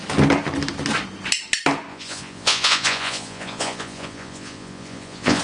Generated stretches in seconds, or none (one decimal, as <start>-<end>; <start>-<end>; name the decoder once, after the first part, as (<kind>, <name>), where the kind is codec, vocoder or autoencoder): 1.9-5.4 (vocoder, Vocos)